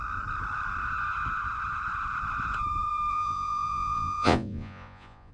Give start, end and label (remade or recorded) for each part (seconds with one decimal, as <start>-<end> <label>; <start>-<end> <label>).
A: 0.0-3.1 recorded; 3.1-5.3 remade